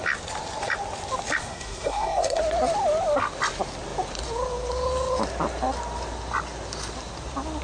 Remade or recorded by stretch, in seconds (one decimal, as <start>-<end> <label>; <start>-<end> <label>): 0.0-1.4 recorded; 1.4-2.4 remade; 2.4-7.6 recorded